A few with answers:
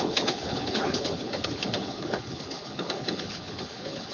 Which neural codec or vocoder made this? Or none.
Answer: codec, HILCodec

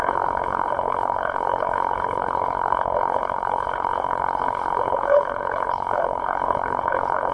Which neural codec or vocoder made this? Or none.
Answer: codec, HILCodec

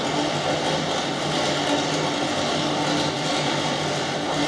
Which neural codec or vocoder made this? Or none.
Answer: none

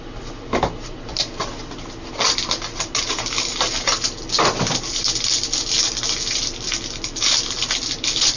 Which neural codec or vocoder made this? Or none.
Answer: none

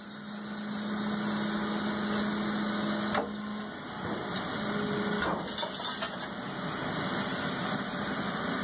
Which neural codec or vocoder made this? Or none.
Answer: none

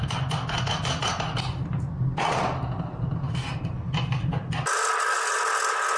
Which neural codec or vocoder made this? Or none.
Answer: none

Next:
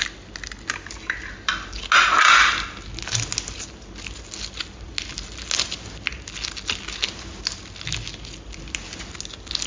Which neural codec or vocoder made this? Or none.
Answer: none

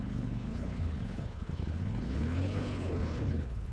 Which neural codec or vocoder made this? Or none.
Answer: codec, HILCodec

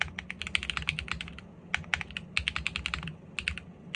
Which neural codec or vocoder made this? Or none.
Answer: none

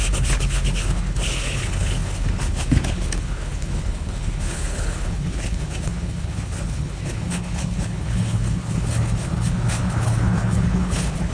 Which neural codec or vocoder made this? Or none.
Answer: codec, HILCodec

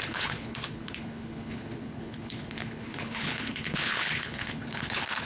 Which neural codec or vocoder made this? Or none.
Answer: codec, HILCodec